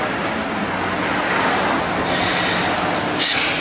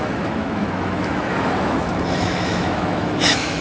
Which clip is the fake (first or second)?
second